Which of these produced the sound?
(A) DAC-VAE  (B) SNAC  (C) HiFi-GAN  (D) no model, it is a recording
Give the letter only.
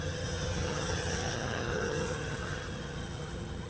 C